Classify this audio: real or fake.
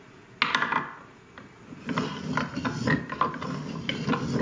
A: real